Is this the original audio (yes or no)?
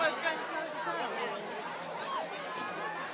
yes